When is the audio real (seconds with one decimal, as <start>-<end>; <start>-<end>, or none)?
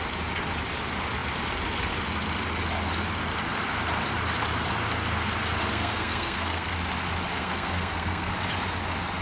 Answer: 0.0-5.7; 6.7-7.4; 8.3-9.2